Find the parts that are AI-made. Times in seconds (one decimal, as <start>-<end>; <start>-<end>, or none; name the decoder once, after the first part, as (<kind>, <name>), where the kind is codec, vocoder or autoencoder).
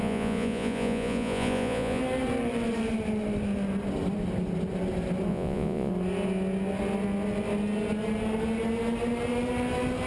0.0-2.0 (vocoder, Vocos); 5.3-5.9